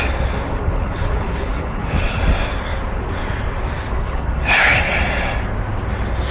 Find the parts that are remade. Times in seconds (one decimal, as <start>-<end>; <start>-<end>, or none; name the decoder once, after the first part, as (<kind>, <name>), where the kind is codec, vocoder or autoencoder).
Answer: 0.6-2.2 (codec, HILCodec); 3.9-4.8